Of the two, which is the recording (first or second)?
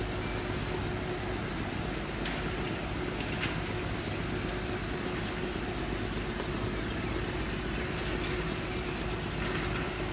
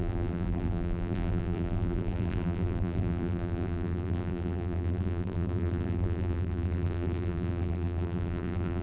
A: first